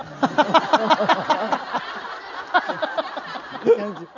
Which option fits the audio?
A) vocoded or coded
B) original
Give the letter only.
B